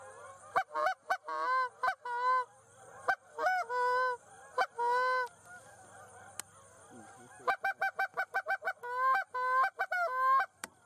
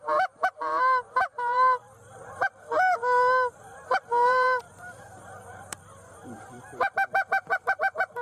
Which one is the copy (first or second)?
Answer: second